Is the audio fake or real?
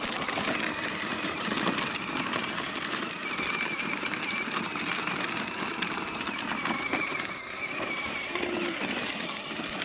fake